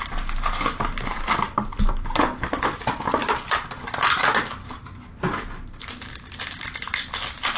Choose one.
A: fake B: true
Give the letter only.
B